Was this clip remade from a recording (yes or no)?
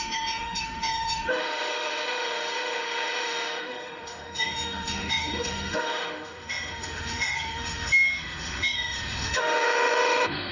yes